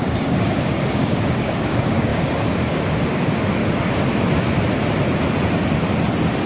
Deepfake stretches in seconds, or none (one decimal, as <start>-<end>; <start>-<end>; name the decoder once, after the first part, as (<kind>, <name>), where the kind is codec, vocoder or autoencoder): 0.0-3.6 (codec, DAC)